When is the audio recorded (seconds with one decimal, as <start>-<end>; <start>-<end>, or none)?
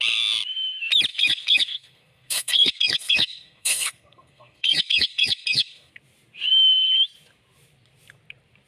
0.0-1.1; 5.9-8.7